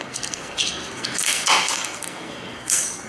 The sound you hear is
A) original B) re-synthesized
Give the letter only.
B